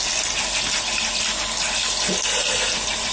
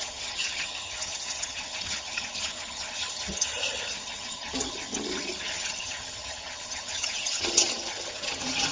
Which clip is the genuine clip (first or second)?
first